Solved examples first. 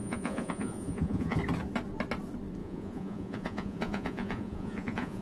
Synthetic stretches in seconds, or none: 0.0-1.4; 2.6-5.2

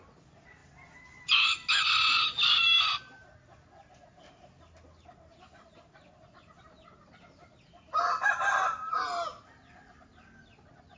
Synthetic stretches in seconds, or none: 5.3-8.5

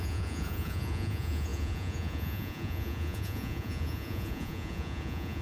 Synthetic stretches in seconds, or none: 0.0-5.4

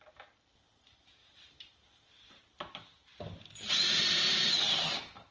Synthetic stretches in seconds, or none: 1.2-4.4

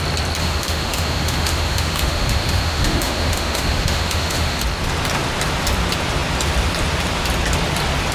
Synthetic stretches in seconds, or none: 0.4-4.6

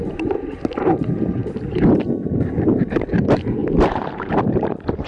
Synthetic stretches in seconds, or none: 0.0-1.4; 3.1-5.1